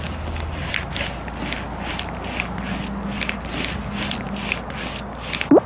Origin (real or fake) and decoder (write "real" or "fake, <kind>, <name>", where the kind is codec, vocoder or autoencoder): real